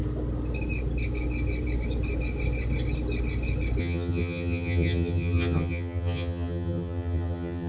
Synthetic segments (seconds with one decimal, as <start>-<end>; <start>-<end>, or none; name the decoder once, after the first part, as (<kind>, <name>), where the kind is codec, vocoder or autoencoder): 3.8-7.7 (vocoder, HiFi-GAN)